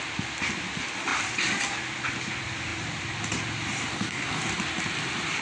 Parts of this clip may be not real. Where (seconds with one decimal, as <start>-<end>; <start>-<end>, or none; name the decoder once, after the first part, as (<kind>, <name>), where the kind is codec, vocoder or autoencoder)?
3.9-4.4 (codec, DAC)